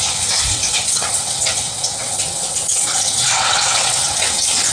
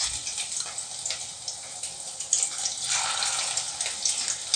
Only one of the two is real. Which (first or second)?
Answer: second